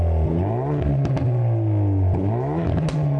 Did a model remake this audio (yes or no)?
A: no